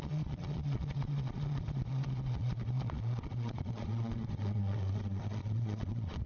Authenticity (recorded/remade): remade